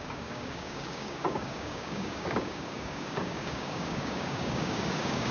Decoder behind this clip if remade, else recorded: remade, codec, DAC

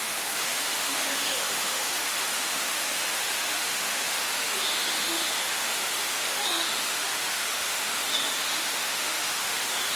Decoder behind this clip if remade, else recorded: remade, autoencoder, DAC-VAE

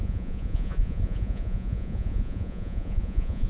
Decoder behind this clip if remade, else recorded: remade, vocoder, Vocos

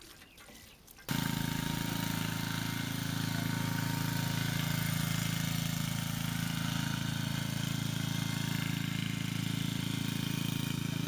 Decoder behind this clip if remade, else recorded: recorded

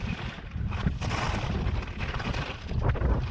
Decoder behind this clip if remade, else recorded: recorded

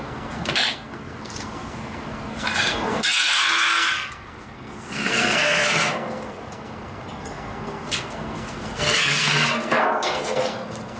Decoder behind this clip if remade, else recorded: remade, codec, SNAC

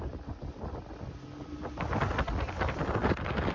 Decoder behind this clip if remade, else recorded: recorded